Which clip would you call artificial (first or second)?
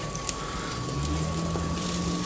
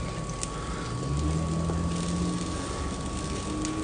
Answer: first